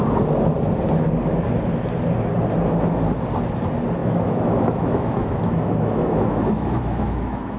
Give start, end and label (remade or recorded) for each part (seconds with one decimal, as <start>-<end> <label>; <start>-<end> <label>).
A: 0.0-4.0 recorded; 4.0-7.6 remade